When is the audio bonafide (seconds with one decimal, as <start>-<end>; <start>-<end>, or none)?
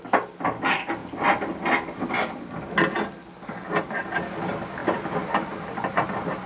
0.0-6.5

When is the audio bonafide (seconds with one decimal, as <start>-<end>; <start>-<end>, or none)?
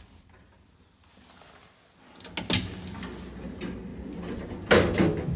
0.0-5.4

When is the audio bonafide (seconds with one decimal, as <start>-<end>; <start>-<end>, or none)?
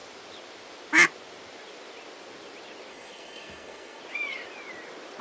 0.0-2.9; 4.0-5.2